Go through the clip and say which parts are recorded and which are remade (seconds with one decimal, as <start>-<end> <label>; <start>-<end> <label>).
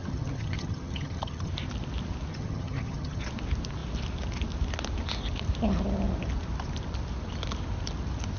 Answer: 0.0-1.5 remade; 1.5-2.3 recorded; 2.3-3.2 remade; 3.2-8.4 recorded